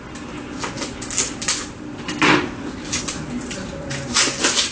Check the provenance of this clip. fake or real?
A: real